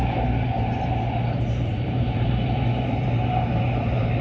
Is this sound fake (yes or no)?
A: yes